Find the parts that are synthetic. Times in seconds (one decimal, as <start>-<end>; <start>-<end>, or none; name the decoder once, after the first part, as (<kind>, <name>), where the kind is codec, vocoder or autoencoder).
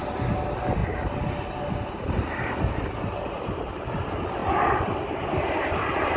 none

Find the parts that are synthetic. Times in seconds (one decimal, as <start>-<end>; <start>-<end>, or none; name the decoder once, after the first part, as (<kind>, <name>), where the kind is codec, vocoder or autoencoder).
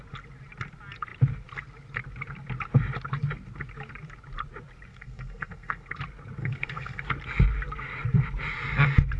4.9-5.9 (codec, SNAC); 6.4-7.1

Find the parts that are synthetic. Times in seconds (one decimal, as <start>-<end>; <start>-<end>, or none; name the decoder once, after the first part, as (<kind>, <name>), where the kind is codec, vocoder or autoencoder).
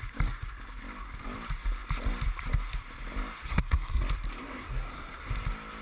3.4-4.0 (codec, SNAC); 4.4-5.3